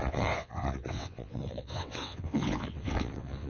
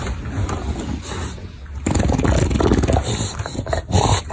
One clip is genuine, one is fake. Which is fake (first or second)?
first